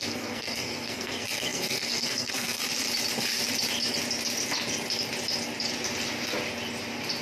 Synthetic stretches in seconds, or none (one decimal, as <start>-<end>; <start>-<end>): 0.0-2.6